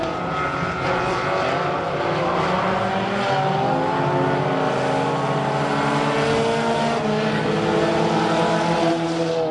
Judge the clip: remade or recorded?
recorded